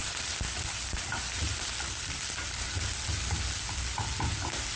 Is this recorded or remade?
recorded